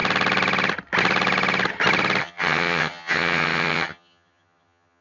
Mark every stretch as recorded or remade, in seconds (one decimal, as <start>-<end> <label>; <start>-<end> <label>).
0.0-2.2 recorded; 2.2-5.0 remade